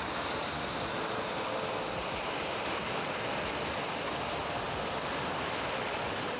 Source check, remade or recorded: recorded